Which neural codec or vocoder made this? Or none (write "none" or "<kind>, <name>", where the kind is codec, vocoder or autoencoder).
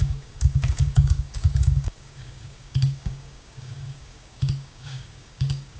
codec, DAC